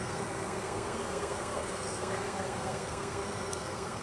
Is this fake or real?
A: fake